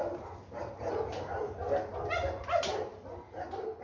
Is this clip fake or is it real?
real